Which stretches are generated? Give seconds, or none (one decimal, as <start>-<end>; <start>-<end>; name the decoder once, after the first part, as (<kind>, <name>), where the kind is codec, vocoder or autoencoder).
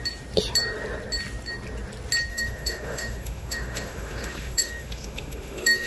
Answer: 2.3-5.9 (autoencoder, DAC-VAE)